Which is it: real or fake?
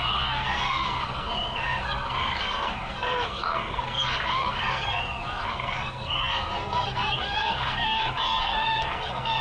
fake